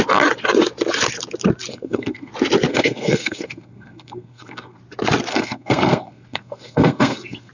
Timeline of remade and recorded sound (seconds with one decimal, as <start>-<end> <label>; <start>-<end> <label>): 0.0-1.7 recorded; 1.7-2.3 remade; 2.3-2.7 recorded; 2.7-4.8 remade; 4.8-5.3 recorded; 5.3-7.5 remade